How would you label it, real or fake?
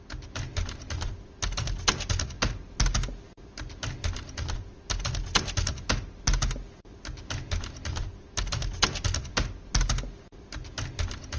real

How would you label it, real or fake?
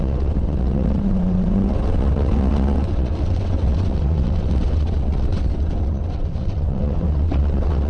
fake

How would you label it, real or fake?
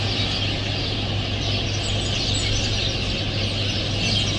real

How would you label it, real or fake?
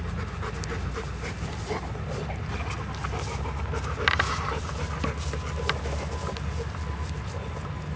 real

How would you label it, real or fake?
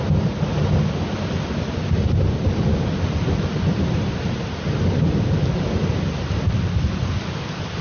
real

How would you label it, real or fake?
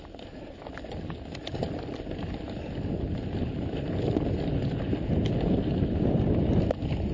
real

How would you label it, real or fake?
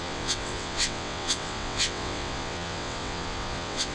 fake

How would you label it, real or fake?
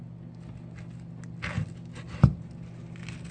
real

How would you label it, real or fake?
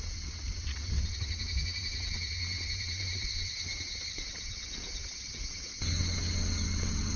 fake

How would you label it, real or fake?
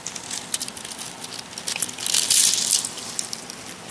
real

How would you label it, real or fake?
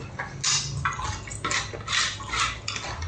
real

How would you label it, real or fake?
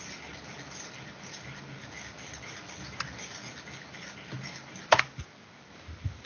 real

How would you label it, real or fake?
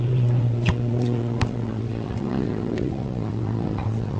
fake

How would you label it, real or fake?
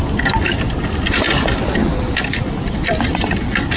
real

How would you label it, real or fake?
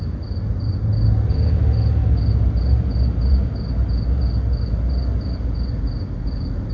real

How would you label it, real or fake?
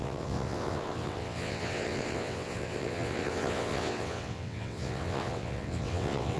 fake